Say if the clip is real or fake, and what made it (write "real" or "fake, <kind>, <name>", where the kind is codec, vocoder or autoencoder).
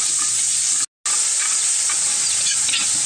real